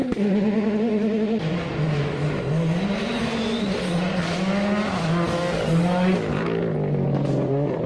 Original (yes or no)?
yes